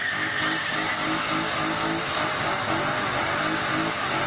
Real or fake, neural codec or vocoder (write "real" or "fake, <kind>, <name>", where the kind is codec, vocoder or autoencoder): real